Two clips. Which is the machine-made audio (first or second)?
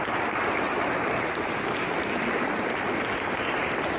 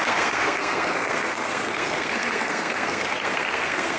second